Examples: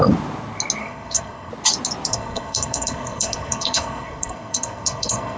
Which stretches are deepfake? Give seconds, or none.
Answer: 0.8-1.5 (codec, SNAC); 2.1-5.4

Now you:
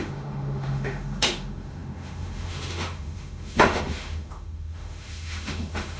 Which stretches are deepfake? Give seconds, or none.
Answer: 0.0-6.0 (autoencoder, DAC-VAE)

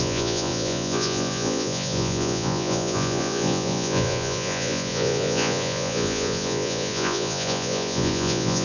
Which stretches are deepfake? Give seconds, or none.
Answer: 0.0-8.6 (vocoder, Vocos)

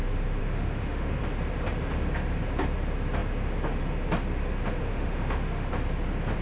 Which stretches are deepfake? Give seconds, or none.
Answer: 0.4-1.2 (autoencoder, DAC-VAE); 4.8-5.7

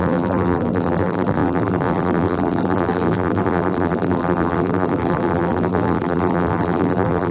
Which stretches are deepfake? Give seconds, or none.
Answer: 0.0-7.3 (vocoder, BigVGAN v2)